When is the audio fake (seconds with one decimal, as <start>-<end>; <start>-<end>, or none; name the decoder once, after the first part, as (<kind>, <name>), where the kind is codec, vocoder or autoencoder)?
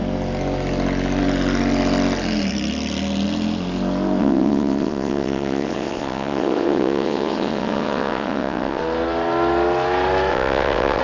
4.2-8.8 (vocoder, WaveNeXt); 10.3-11.0